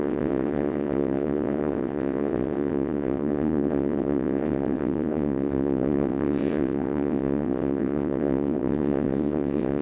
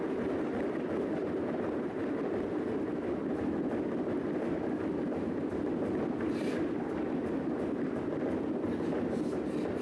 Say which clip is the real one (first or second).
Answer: second